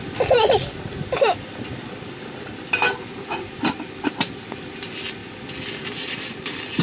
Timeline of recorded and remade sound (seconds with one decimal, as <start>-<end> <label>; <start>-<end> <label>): 0.0-6.8 recorded